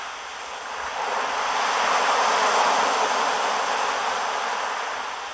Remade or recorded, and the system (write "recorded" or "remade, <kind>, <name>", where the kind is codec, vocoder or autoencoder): recorded